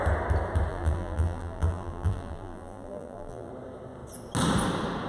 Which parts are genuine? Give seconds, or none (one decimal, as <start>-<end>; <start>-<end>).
0.0-0.7; 3.5-5.1